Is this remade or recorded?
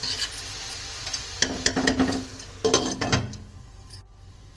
recorded